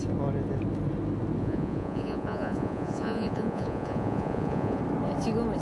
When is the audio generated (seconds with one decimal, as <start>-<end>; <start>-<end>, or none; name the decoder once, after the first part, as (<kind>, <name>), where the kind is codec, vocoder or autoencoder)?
1.4-4.8 (vocoder, Vocos)